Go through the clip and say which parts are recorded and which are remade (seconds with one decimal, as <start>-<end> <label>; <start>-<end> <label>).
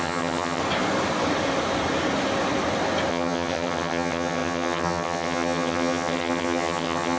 0.0-0.6 remade; 0.6-3.1 recorded; 3.1-7.2 remade